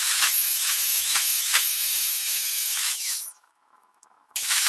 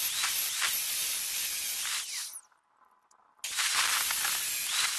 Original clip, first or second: second